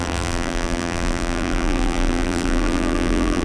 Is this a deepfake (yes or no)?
yes